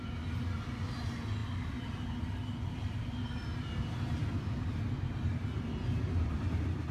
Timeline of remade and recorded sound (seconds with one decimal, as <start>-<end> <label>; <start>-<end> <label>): 0.0-6.9 recorded